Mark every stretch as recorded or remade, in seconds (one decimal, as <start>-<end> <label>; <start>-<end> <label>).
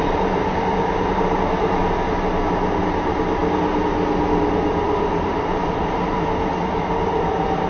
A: 0.0-1.8 remade; 1.8-3.0 recorded; 3.0-3.4 remade; 3.4-4.5 recorded; 4.5-7.7 remade